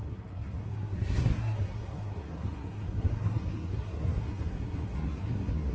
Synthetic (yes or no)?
yes